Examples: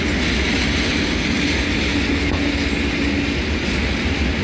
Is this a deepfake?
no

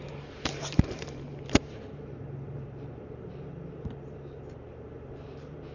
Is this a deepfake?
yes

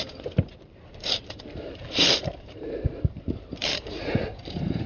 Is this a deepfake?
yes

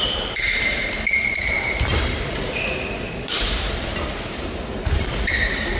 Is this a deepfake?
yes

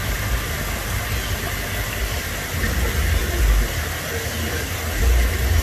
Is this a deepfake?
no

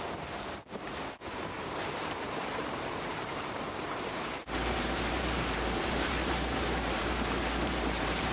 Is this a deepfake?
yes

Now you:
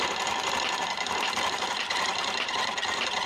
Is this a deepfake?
yes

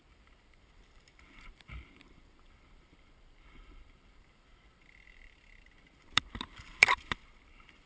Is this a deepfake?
yes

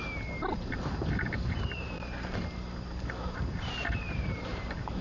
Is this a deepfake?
yes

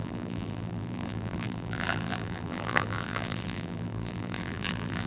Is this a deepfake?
yes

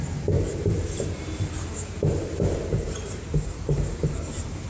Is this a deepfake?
yes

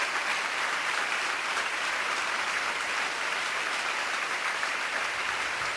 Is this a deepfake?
yes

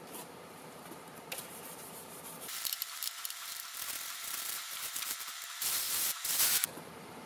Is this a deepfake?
yes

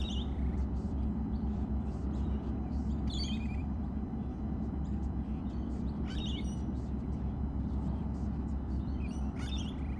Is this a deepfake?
yes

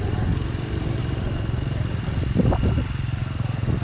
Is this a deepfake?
yes